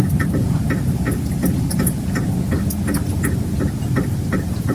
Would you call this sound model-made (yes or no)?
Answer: no